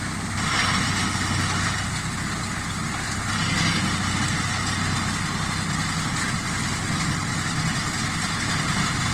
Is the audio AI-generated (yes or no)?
no